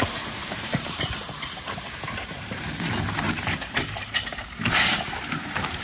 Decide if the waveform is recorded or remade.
remade